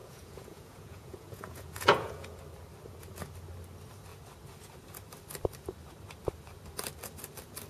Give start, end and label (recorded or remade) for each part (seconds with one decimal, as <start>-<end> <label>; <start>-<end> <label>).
0.0-2.4 remade; 2.4-7.7 recorded